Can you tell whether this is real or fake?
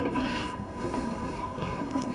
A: fake